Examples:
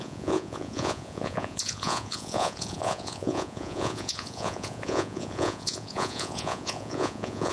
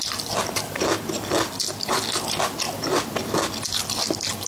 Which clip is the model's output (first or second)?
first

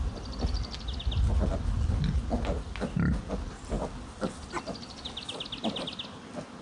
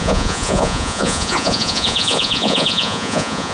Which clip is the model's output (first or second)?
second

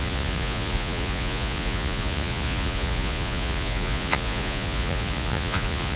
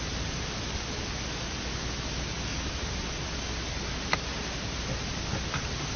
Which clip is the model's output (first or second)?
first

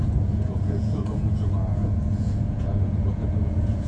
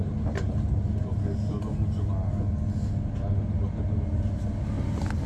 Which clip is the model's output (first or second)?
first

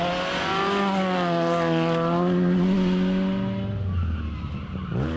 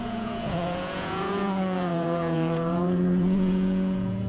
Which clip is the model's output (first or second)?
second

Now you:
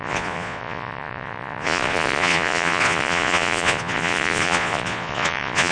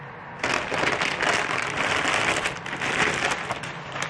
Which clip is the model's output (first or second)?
first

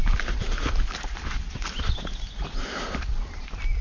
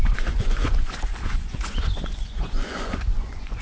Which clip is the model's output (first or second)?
second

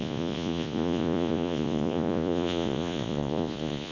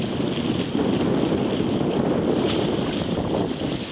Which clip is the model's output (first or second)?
first